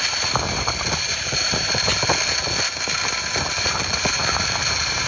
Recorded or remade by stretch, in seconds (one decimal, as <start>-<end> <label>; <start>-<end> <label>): 0.0-1.9 remade; 1.9-3.6 recorded; 3.6-5.1 remade